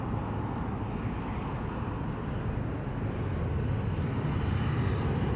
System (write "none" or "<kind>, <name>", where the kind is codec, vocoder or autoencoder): none